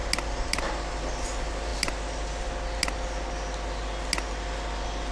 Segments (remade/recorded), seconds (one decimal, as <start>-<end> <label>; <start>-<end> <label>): 0.0-5.1 recorded